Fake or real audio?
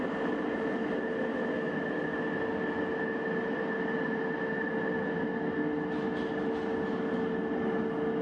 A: real